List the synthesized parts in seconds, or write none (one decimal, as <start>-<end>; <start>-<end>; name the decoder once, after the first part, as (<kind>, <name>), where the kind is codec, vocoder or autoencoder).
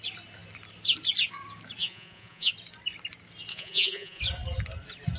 1.8-2.5 (vocoder, Vocos); 3.5-4.2